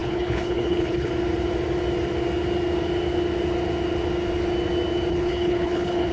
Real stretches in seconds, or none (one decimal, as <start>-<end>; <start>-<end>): 1.1-5.1

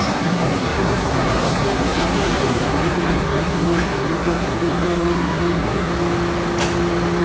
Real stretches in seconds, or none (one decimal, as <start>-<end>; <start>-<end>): 5.9-7.2

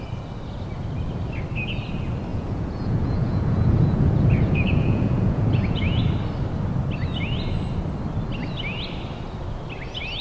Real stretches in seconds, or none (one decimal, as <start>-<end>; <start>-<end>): 0.0-2.3; 6.0-10.2

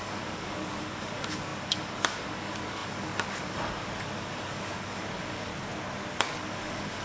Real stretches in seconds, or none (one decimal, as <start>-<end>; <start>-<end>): 5.5-6.3

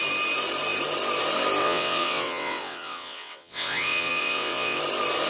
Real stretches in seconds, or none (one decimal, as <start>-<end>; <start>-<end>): 0.0-1.6; 4.8-5.3

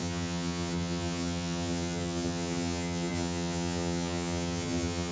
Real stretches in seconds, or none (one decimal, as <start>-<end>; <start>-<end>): none

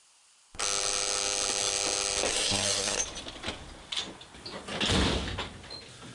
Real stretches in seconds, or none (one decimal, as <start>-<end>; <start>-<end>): 0.0-2.3; 3.0-6.1